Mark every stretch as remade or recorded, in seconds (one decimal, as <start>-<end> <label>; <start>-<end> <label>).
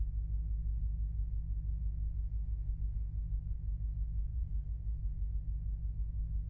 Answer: 0.0-4.3 recorded; 4.3-5.3 remade; 5.3-6.5 recorded